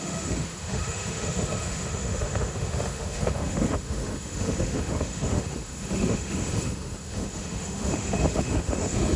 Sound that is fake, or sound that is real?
fake